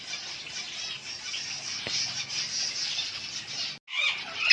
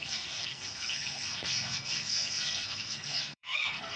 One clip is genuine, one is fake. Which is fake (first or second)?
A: second